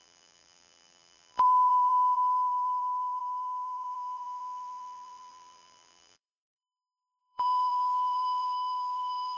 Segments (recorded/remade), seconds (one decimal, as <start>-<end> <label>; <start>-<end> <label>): 0.0-9.4 remade